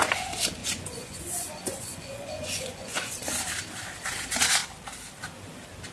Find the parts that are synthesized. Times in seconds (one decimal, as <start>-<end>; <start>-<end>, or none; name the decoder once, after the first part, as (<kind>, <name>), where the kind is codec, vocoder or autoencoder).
0.6-3.1 (vocoder, Vocos)